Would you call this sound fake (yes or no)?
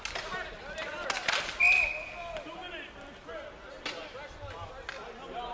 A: no